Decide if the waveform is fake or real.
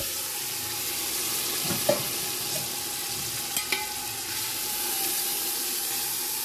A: real